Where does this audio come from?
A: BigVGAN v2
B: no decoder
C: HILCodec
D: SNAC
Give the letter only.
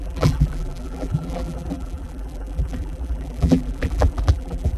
A